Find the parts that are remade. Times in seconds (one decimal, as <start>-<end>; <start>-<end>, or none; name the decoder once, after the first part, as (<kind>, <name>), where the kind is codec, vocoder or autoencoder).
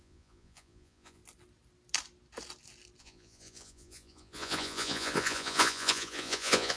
0.0-1.2 (vocoder, Vocos); 3.0-6.8